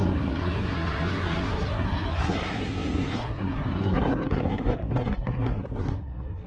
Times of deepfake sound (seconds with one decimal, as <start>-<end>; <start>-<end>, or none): 0.0-6.5